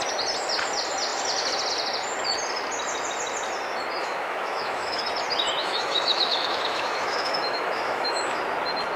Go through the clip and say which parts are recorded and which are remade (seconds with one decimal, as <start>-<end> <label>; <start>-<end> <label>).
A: 0.0-4.0 recorded; 4.0-5.0 remade; 5.0-5.6 recorded; 5.6-8.4 remade; 8.4-9.0 recorded